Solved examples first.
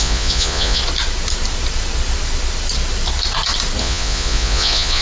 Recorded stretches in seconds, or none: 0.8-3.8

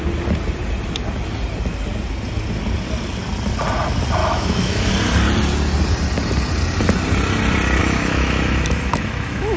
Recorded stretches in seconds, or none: 0.0-4.2; 4.9-7.8

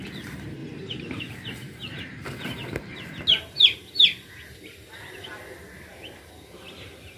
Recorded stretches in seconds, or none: 0.6-1.2; 1.8-3.8; 5.3-5.9

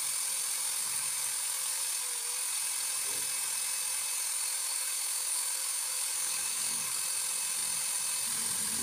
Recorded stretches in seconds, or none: 0.0-0.8; 1.9-4.6; 7.0-8.8